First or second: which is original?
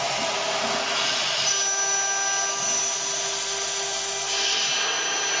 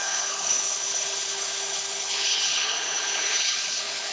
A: first